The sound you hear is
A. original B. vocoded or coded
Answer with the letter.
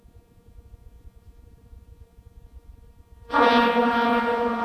B